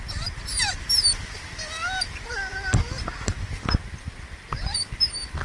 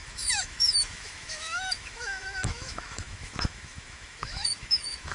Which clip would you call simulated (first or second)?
second